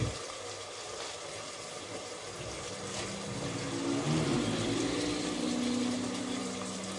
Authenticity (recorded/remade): recorded